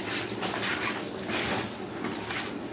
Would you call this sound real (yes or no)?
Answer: yes